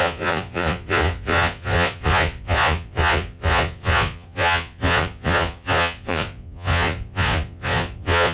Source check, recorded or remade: remade